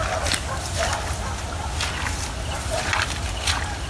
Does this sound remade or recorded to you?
recorded